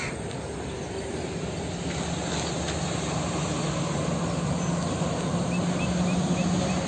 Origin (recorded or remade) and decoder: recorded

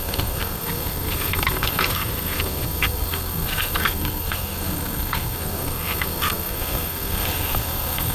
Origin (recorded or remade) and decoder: remade, codec, SNAC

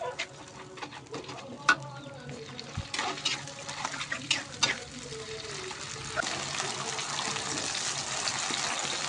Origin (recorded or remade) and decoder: recorded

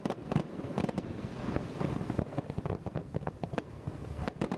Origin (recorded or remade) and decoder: remade, codec, SNAC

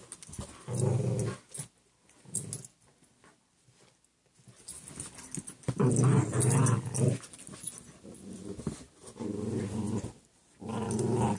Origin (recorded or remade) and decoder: recorded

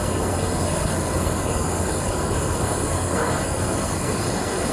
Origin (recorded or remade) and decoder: remade, codec, SNAC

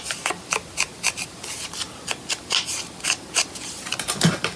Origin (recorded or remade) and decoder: recorded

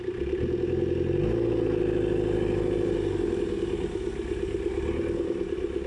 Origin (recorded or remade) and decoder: recorded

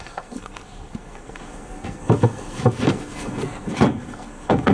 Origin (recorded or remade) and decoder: remade, codec, SNAC